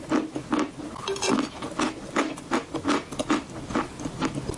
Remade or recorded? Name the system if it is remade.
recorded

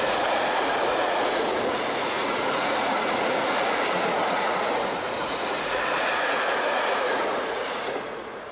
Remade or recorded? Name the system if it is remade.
remade, vocoder, Vocos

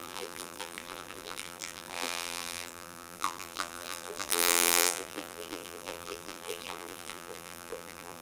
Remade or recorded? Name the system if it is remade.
remade, vocoder, BigVGAN v2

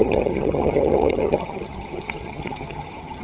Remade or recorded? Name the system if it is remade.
remade, vocoder, HiFi-GAN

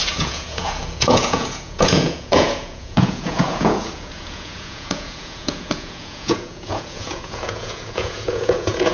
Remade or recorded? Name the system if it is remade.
remade, vocoder, Vocos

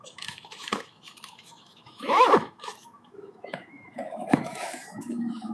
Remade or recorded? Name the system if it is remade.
remade, autoencoder, DAC-VAE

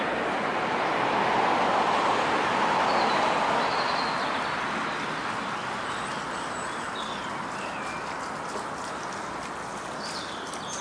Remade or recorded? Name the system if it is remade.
recorded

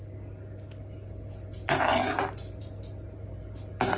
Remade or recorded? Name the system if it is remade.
recorded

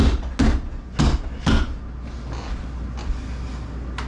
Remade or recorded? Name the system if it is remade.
recorded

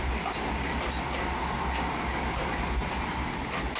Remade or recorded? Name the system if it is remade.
recorded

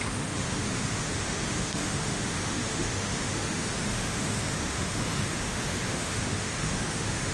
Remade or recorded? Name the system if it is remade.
remade, autoencoder, DAC-VAE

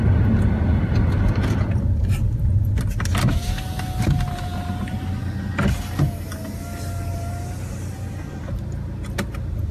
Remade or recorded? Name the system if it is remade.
recorded